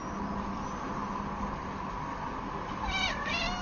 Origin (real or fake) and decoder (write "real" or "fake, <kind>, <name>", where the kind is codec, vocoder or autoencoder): real